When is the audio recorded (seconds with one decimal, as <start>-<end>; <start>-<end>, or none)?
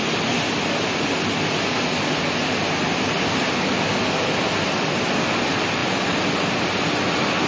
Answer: 0.0-7.5